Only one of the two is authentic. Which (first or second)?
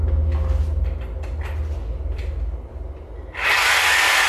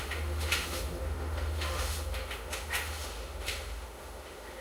first